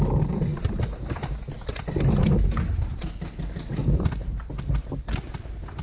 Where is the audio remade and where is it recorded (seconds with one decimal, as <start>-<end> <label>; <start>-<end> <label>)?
0.0-2.9 recorded; 2.9-4.5 remade; 4.5-5.8 recorded